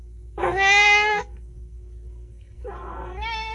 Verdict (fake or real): fake